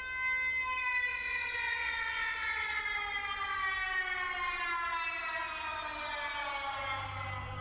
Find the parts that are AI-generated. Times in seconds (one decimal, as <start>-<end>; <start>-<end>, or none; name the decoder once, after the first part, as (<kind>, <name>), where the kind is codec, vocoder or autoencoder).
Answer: 1.1-2.8 (vocoder, WaveNeXt)